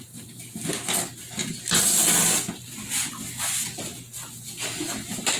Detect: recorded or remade recorded